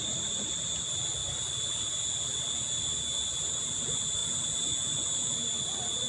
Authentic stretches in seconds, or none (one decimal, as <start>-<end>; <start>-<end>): 0.0-6.1